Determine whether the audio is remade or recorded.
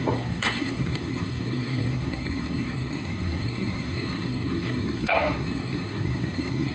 remade